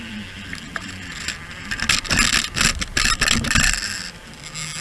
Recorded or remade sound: recorded